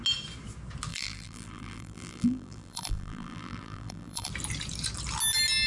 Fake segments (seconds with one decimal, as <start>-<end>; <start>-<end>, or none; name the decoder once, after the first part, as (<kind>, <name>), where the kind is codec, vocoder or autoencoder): 0.9-4.3 (vocoder, BigVGAN v2)